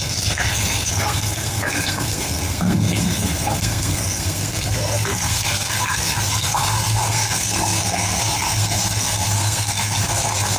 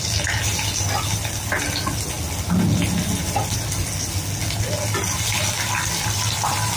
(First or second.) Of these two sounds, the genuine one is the second